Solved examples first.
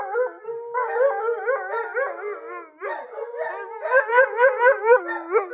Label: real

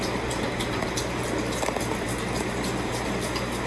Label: real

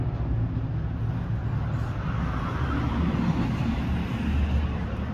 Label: real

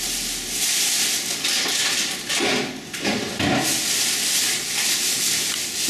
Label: real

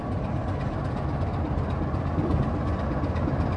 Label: real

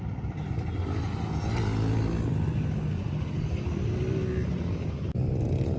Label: real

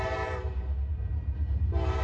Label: fake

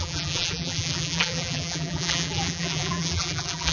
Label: fake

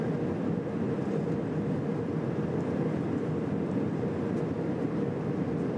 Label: real